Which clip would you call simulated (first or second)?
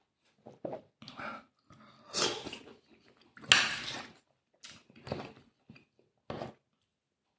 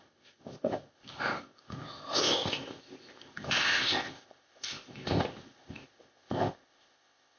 second